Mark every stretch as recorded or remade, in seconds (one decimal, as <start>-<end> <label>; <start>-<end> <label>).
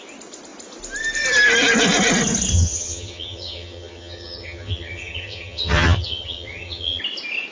0.0-2.5 recorded; 2.5-7.0 remade; 7.0-7.5 recorded